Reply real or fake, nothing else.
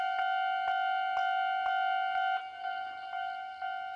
real